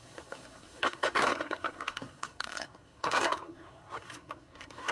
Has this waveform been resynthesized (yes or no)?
yes